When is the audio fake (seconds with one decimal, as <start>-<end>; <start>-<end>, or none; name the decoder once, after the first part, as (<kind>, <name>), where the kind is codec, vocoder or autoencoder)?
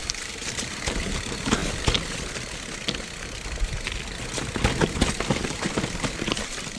0.0-1.6 (vocoder, BigVGAN v2); 5.7-6.8